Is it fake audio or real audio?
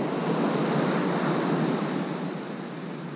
real